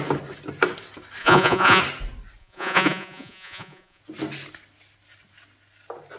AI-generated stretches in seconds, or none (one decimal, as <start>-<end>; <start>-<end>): 1.2-1.8; 2.4-4.0